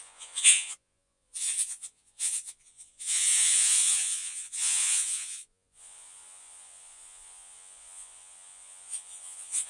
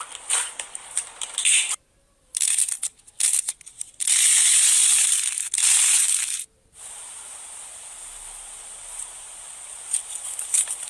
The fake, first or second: first